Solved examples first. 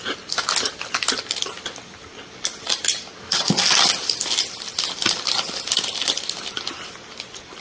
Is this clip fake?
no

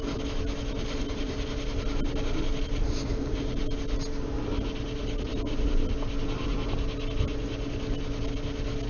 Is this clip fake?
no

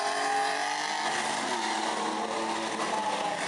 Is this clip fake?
no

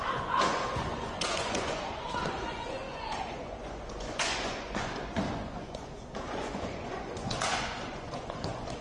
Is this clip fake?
yes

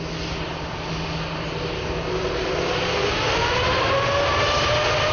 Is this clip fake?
no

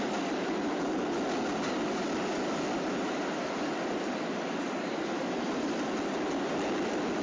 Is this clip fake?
no